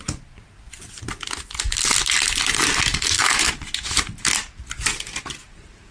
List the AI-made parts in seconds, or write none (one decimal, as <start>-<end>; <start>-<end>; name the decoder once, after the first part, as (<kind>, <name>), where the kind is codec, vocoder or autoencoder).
2.9-3.5 (autoencoder, DAC-VAE)